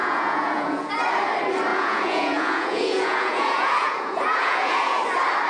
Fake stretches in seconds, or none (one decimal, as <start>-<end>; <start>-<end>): 0.0-0.9; 1.7-5.0